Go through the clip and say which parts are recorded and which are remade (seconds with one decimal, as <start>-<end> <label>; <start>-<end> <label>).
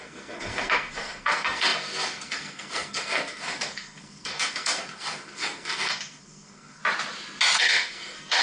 0.0-6.8 remade; 6.8-7.6 recorded; 7.6-8.4 remade